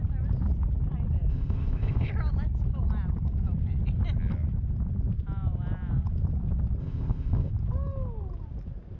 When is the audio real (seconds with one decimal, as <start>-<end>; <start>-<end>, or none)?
0.0-1.3; 2.1-6.8; 7.5-9.0